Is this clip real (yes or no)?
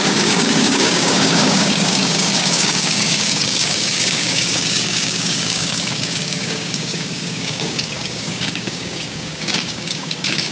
no